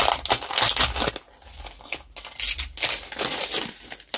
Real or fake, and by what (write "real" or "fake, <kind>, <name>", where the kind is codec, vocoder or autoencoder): real